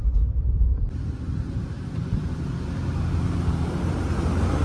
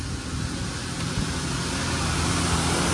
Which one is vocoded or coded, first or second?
first